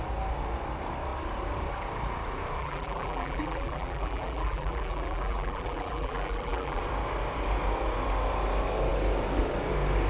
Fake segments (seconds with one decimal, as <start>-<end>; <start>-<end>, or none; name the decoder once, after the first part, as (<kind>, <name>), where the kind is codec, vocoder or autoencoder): 2.6-6.8 (vocoder, BigVGAN v2)